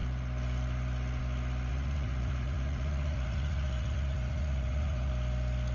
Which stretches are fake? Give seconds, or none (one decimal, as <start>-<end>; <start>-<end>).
1.7-5.1